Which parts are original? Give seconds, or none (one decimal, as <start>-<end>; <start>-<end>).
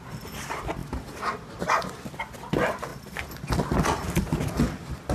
0.0-5.1